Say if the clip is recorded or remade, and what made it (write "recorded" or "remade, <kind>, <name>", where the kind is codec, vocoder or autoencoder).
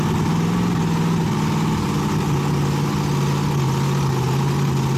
recorded